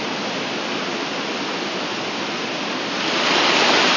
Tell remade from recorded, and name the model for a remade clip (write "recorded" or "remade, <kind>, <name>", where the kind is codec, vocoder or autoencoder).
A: recorded